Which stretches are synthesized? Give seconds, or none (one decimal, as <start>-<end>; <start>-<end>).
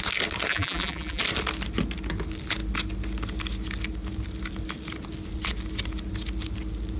0.5-1.2